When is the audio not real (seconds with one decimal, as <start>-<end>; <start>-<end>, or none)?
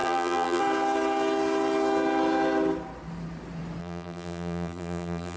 0.0-0.6; 3.8-5.4